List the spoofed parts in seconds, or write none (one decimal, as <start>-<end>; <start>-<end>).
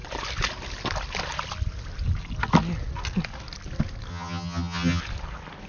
4.1-5.0